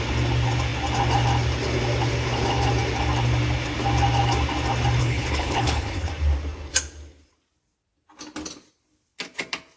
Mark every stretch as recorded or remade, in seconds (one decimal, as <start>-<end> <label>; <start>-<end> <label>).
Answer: 0.0-5.0 recorded; 5.0-6.1 remade; 6.1-9.8 recorded

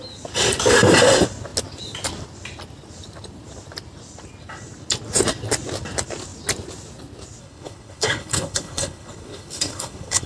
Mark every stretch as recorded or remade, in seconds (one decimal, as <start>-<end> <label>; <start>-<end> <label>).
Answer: 0.0-7.4 recorded; 7.4-10.3 remade